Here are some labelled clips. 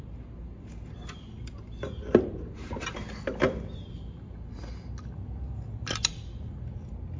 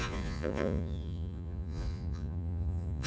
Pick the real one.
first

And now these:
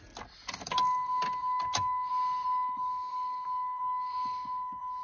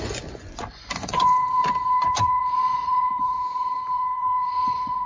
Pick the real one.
first